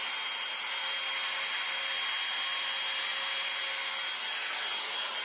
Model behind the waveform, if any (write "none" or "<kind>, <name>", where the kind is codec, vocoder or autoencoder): none